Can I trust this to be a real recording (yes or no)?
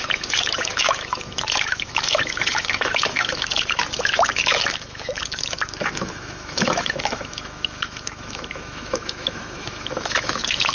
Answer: no